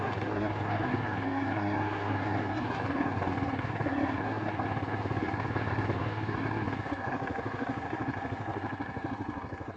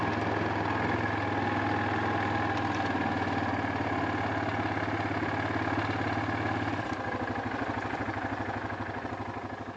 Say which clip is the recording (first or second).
second